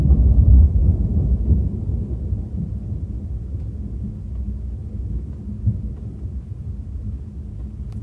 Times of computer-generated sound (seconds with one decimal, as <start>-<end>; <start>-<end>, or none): none

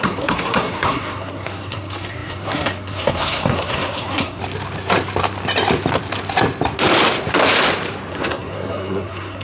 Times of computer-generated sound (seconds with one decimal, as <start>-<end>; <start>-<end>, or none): 0.0-4.4; 8.1-9.4

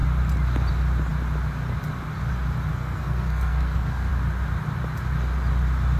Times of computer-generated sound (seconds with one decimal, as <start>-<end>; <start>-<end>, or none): 2.7-4.1

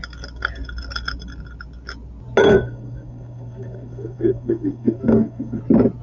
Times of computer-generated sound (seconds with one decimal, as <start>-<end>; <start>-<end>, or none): 2.4-5.6

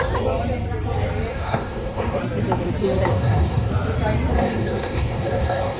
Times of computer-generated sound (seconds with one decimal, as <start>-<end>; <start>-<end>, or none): 1.3-2.2; 3.1-3.7; 4.3-5.8

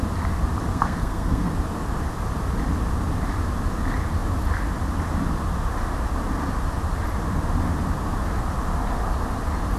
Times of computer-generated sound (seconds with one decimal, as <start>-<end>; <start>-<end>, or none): 0.7-1.5